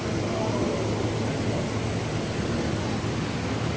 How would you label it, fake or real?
real